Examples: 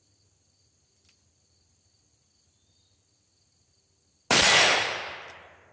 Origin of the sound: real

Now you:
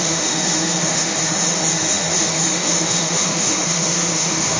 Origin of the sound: fake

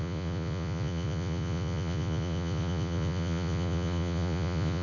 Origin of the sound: fake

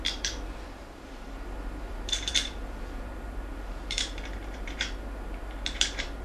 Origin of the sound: fake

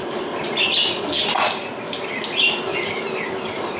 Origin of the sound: real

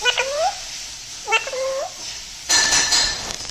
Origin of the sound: fake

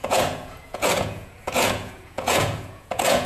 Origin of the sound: fake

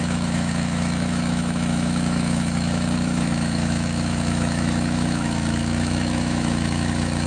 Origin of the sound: fake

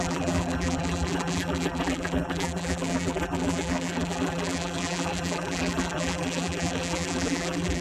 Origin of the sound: fake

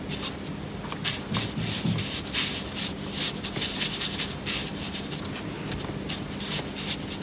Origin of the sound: real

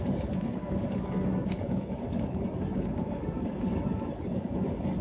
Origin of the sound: fake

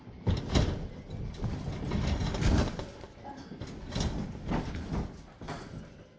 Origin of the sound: real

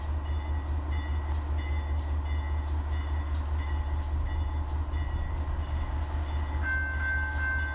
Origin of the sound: real